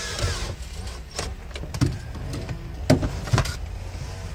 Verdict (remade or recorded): recorded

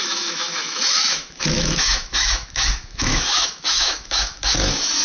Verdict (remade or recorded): remade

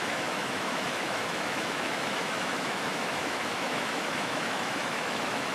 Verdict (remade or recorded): remade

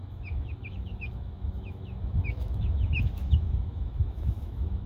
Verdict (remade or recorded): remade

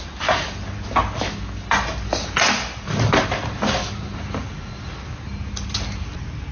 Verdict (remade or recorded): recorded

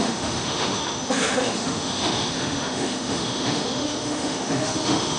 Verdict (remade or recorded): remade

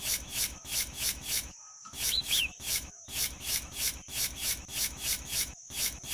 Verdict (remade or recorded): remade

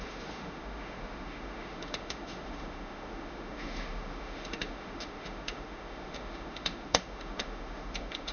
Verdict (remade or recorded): remade